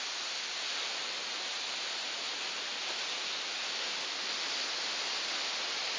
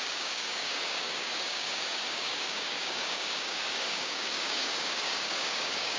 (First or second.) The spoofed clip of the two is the second